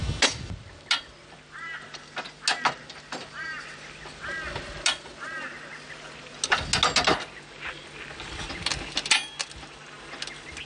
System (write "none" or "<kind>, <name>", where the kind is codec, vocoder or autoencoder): none